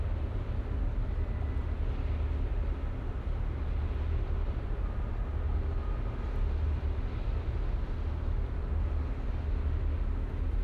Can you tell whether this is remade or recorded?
recorded